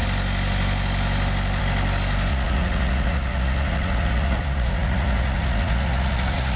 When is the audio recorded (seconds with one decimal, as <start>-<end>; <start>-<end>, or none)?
0.0-2.3